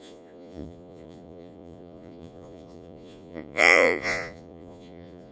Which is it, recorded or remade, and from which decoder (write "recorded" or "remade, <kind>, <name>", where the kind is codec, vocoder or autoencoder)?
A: remade, vocoder, Vocos